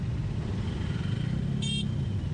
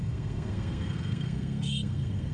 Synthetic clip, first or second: second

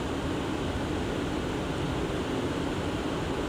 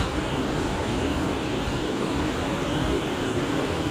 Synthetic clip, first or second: second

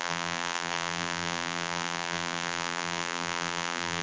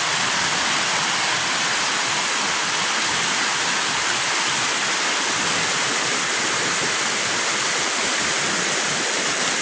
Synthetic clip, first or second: first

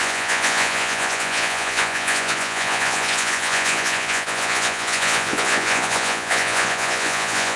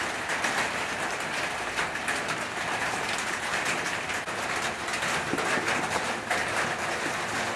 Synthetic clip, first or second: first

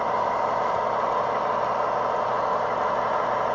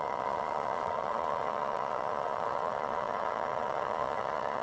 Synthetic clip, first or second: second